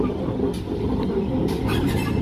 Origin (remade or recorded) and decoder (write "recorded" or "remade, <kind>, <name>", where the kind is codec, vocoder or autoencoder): recorded